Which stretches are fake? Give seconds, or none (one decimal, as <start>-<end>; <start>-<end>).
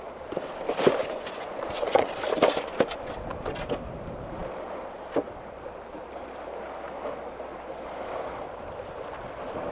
1.0-2.1